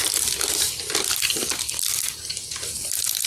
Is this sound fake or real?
real